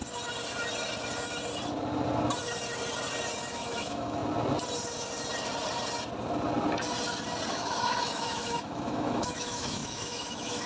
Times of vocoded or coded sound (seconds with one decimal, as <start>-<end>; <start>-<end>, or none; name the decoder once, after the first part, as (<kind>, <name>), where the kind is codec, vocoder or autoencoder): 3.5-4.2 (autoencoder, DAC-VAE); 7.5-10.7